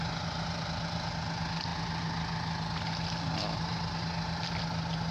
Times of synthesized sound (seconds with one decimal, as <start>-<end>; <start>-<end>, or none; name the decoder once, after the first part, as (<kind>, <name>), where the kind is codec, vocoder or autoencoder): none